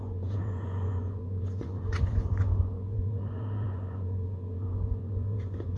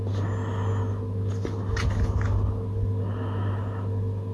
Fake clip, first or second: first